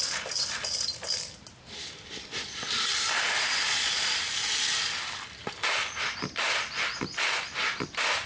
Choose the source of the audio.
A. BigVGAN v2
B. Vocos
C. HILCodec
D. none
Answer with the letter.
D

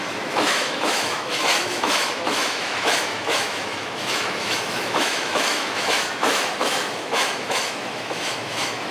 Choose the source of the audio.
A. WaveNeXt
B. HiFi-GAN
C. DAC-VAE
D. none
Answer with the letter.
C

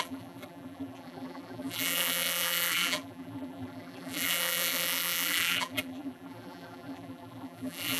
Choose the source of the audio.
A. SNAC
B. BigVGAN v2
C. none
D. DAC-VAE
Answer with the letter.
B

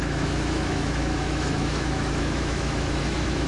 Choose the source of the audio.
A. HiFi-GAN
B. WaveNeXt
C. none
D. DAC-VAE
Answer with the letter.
D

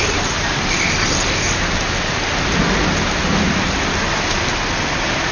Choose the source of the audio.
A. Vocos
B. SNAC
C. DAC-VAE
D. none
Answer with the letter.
D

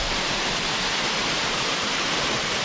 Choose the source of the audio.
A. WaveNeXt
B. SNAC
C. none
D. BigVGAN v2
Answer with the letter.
D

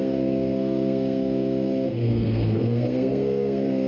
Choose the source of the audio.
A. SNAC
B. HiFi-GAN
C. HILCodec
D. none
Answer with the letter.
A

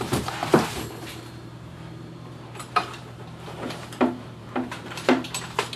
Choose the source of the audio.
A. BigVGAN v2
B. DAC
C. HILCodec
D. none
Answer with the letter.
A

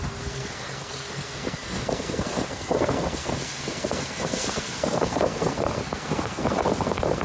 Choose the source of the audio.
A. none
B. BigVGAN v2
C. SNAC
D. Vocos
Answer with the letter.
C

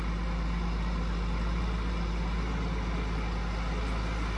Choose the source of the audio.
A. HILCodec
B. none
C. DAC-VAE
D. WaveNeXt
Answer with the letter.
B